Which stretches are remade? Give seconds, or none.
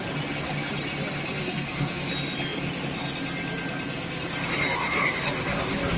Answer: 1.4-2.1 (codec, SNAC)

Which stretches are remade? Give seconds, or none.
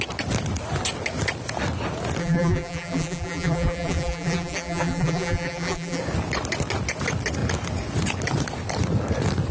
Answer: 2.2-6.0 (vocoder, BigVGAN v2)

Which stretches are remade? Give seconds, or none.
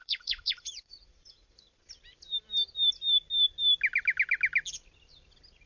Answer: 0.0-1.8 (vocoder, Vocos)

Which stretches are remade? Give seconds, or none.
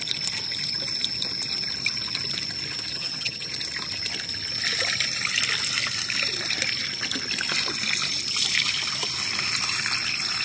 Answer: 2.9-3.5 (vocoder, HiFi-GAN)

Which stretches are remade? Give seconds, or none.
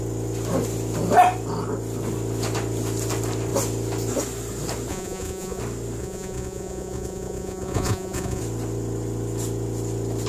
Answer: 4.9-5.6 (vocoder, Vocos); 6.0-8.4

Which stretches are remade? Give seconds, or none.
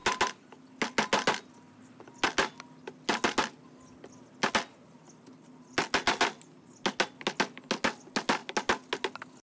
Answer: none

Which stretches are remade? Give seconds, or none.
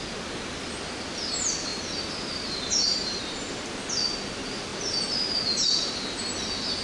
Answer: none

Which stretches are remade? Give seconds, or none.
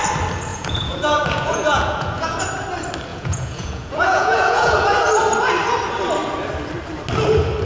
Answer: 0.5-2.4 (vocoder, Vocos); 3.1-5.0